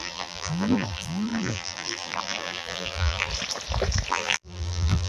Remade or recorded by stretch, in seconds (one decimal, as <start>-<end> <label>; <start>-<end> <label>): 0.0-3.3 remade; 3.3-4.1 recorded; 4.1-5.1 remade

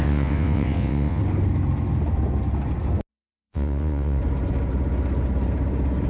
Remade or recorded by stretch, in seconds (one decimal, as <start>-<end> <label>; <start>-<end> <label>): 0.0-1.2 remade; 1.2-3.1 recorded; 3.1-4.2 remade; 4.2-6.1 recorded

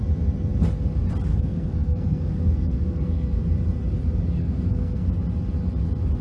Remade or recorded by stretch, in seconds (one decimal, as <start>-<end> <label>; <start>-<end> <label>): 0.0-1.3 recorded; 1.3-3.4 remade; 3.4-4.4 recorded; 4.4-5.2 remade; 5.2-6.2 recorded

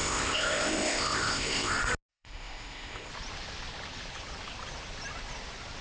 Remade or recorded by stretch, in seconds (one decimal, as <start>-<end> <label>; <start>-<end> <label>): 0.0-1.7 remade; 1.7-2.1 recorded; 2.1-3.1 remade; 3.1-5.8 recorded

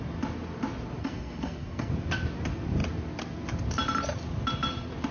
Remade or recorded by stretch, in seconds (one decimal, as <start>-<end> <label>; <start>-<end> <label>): 0.0-1.0 recorded; 1.0-1.9 remade; 1.9-5.1 recorded

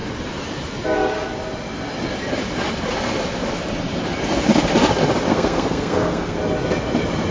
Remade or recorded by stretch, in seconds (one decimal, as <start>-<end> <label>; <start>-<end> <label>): 0.0-5.3 recorded; 5.3-6.4 remade; 6.4-7.3 recorded